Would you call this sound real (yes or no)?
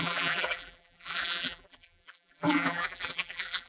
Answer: no